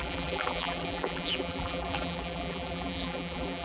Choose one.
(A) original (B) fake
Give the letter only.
B